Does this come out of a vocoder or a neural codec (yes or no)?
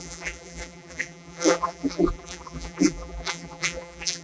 yes